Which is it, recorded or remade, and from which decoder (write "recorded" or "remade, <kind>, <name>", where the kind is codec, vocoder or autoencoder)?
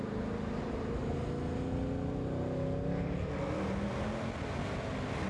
recorded